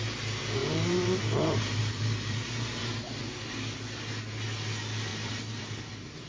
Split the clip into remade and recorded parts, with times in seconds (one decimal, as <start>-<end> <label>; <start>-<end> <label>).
0.0-0.6 recorded; 0.6-3.2 remade; 3.2-5.1 recorded; 5.1-5.6 remade; 5.6-6.3 recorded